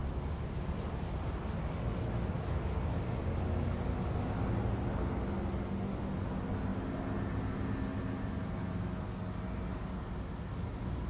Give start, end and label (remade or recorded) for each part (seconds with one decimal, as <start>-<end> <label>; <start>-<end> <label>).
0.0-11.1 recorded

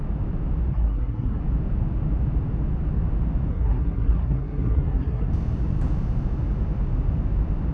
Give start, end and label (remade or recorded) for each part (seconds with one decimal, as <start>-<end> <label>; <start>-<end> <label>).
0.0-0.7 recorded; 0.7-1.4 remade; 1.4-3.5 recorded; 3.5-5.3 remade; 5.3-7.7 recorded

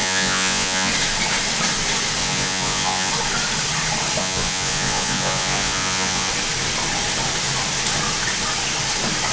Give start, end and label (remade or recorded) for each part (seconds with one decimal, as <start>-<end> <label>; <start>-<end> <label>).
0.0-0.9 remade; 0.9-2.2 recorded; 2.2-3.1 remade; 3.1-4.2 recorded; 4.2-6.3 remade; 6.3-9.3 recorded

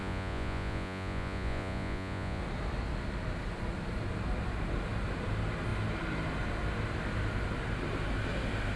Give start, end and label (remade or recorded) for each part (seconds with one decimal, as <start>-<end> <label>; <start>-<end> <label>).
0.0-2.4 remade; 2.4-8.8 recorded

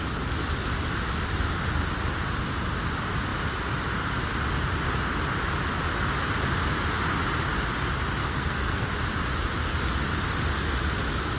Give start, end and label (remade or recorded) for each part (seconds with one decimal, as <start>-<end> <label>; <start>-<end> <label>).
0.0-8.2 recorded; 8.2-8.9 remade; 8.9-11.4 recorded

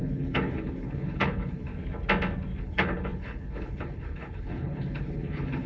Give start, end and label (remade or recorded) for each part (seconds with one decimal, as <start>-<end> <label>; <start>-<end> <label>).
0.0-1.7 remade; 1.7-2.6 recorded; 2.6-5.7 remade

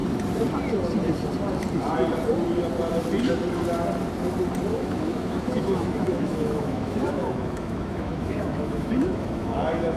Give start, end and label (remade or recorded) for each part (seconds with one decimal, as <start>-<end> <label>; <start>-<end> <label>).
0.0-4.7 recorded; 4.7-10.0 remade

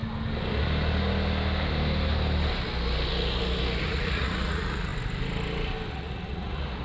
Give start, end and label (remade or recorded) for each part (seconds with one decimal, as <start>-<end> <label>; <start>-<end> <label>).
0.0-3.8 recorded; 3.8-4.9 remade; 4.9-5.9 recorded; 5.9-6.8 remade